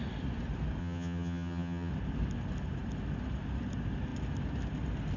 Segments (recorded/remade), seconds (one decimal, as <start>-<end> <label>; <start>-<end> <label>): 0.0-0.8 recorded; 0.8-1.9 remade; 1.9-5.2 recorded